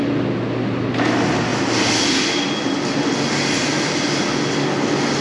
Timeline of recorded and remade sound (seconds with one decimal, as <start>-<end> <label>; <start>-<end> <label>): 0.0-1.5 recorded; 1.5-2.2 remade; 2.2-3.6 recorded; 3.6-4.2 remade; 4.2-5.2 recorded